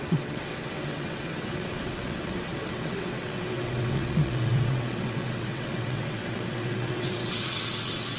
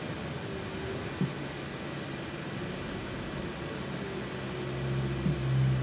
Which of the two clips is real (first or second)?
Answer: second